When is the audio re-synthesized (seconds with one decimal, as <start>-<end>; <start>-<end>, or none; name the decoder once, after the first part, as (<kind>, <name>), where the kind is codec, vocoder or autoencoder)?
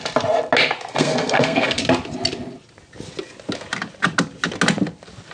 0.9-1.8 (codec, SNAC)